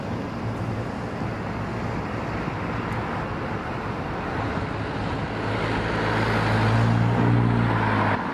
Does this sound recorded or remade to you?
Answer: recorded